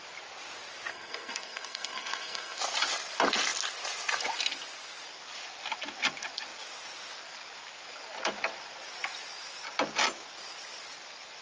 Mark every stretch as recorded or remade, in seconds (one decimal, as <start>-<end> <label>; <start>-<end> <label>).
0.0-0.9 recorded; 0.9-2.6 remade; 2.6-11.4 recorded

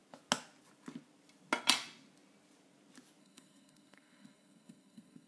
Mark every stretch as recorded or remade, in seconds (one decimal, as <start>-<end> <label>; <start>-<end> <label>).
0.0-3.2 recorded; 3.2-5.3 remade

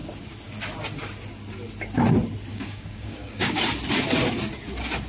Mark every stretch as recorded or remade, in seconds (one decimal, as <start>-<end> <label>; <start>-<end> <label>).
0.0-2.5 recorded; 2.5-3.6 remade; 3.6-5.1 recorded